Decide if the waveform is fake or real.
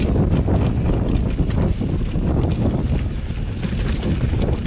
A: real